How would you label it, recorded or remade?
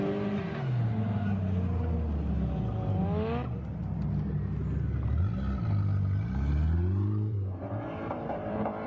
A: recorded